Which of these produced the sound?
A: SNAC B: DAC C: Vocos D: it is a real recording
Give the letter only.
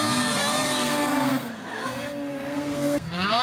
A